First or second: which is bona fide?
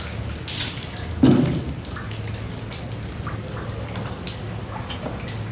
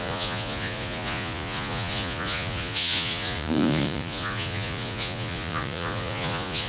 first